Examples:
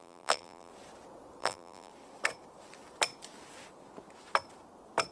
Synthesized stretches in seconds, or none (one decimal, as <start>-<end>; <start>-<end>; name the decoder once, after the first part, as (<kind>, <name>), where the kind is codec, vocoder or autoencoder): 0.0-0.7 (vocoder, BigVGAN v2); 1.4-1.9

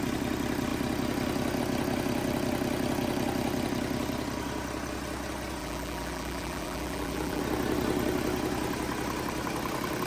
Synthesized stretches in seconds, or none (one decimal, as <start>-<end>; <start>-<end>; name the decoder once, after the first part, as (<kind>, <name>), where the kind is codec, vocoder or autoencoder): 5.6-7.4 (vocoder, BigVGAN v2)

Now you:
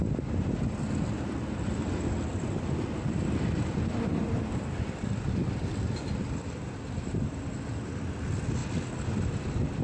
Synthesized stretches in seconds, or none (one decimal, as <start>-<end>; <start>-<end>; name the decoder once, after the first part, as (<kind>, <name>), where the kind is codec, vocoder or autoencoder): 2.3-7.5 (vocoder, BigVGAN v2)

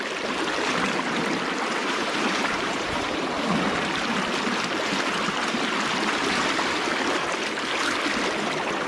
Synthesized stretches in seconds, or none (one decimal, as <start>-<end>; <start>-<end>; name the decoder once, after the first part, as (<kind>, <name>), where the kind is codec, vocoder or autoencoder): 1.8-3.4 (vocoder, BigVGAN v2)